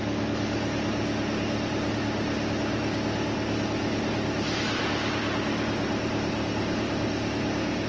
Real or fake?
real